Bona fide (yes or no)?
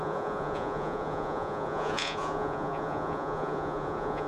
no